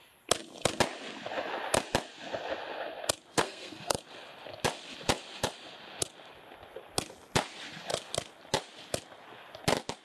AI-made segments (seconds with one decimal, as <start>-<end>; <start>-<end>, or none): 3.3-4.0